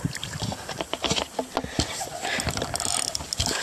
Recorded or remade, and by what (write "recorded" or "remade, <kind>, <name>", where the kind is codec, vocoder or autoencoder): recorded